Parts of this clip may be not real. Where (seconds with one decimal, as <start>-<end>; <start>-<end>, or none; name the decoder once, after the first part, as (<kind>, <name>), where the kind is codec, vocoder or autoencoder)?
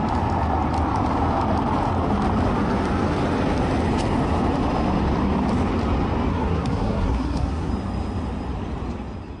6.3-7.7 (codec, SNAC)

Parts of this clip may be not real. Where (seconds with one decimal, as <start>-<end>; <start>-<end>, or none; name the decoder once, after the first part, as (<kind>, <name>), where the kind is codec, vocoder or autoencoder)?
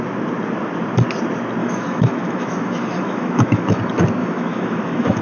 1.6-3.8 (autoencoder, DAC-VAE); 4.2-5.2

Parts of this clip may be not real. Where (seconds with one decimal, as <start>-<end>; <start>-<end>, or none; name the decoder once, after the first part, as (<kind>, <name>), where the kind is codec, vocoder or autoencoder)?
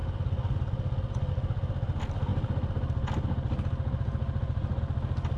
none